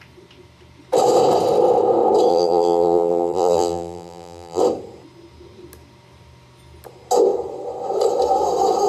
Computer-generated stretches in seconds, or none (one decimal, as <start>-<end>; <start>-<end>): 2.3-4.6